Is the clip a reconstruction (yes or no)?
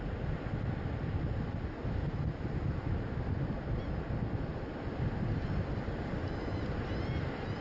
no